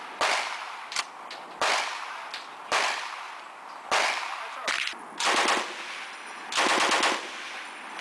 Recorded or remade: recorded